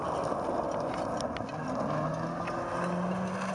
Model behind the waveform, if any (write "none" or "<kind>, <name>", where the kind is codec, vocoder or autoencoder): none